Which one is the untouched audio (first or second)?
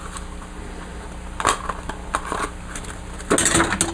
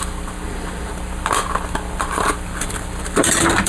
first